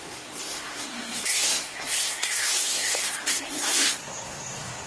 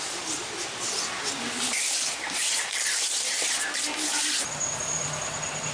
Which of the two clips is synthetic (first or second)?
first